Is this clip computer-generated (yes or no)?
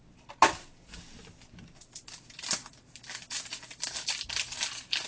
no